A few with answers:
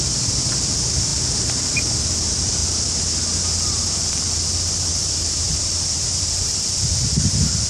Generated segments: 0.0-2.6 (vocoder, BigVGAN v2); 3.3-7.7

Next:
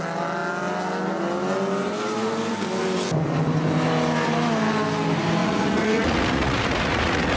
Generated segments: 5.4-7.4 (vocoder, Vocos)

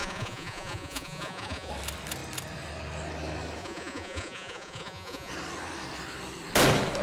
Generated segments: 0.0-1.7 (vocoder, Vocos); 3.6-5.3

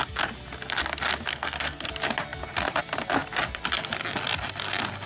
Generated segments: 1.3-1.9 (codec, SNAC)

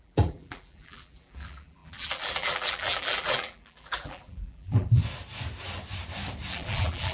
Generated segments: 0.0-5.0 (vocoder, BigVGAN v2); 6.5-7.1

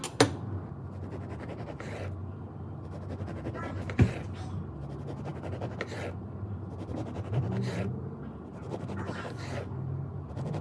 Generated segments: none